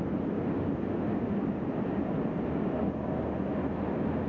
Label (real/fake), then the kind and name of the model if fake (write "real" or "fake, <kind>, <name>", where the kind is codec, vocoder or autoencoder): real